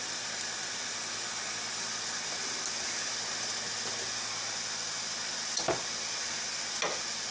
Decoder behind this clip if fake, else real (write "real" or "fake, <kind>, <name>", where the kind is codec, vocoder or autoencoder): real